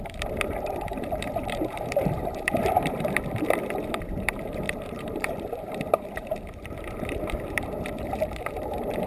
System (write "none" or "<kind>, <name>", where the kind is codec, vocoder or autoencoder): vocoder, BigVGAN v2